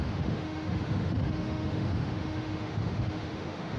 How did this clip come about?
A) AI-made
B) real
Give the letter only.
A